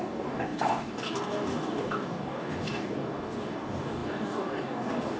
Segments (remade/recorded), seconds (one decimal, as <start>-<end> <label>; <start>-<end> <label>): 0.0-5.2 remade

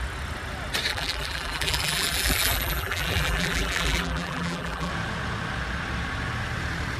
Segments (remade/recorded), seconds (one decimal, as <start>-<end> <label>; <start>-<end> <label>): 0.0-0.9 recorded; 0.9-4.9 remade; 4.9-7.0 recorded

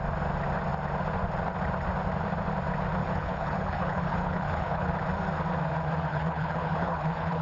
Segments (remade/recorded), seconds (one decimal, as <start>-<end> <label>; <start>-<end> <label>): 0.0-3.0 recorded; 3.0-4.9 remade; 4.9-6.1 recorded; 6.1-7.4 remade